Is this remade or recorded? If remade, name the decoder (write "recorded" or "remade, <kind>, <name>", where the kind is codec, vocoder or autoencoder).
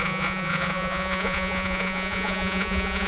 remade, vocoder, Vocos